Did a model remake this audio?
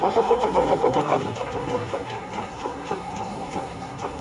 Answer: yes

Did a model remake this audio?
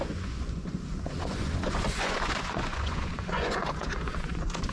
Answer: yes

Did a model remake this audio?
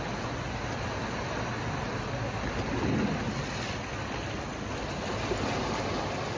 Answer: no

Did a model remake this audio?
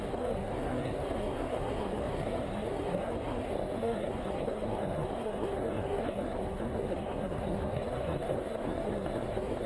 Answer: yes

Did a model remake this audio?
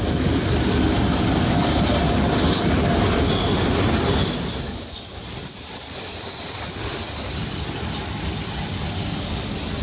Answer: no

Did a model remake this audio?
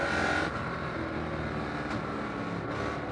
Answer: no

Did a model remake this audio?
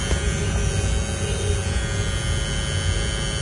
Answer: no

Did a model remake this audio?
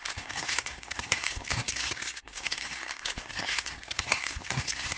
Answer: yes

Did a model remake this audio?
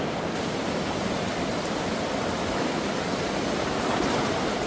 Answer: no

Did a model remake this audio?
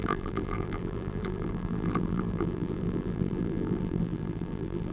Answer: yes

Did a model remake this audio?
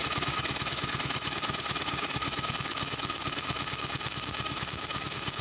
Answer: yes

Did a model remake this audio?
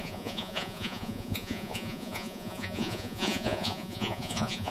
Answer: yes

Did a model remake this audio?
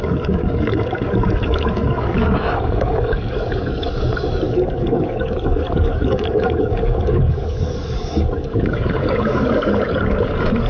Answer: yes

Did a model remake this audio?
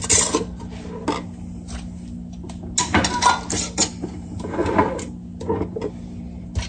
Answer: no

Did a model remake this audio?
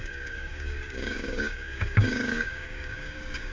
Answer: yes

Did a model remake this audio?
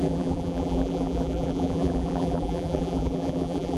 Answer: yes